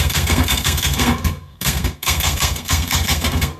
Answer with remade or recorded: remade